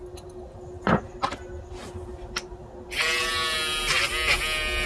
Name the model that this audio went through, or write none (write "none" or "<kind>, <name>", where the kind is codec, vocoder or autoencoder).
none